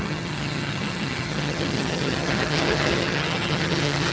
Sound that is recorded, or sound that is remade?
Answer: remade